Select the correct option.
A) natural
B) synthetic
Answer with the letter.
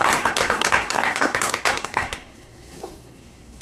B